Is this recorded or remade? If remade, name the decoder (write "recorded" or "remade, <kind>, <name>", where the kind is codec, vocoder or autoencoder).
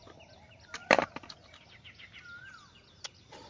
recorded